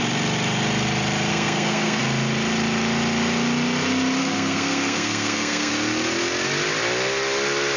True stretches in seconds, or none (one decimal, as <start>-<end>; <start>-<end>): 0.0-1.3; 2.0-4.2; 5.7-7.8